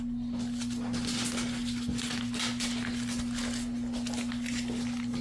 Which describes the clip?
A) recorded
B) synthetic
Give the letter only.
A